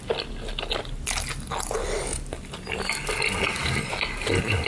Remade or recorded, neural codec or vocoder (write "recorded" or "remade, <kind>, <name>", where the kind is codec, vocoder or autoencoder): recorded